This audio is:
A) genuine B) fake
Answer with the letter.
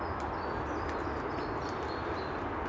A